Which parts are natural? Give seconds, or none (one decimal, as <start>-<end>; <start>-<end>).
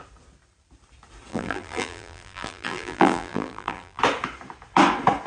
0.0-1.3; 4.0-5.3